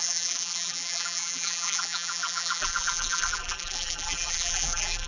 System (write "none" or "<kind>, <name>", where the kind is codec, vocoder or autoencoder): vocoder, BigVGAN v2